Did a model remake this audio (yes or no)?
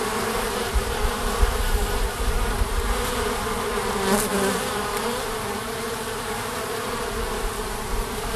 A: yes